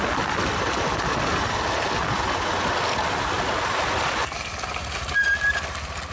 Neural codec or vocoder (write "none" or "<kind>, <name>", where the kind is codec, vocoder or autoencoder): none